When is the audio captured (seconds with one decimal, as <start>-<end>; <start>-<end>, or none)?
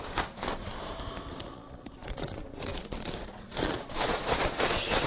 0.7-1.3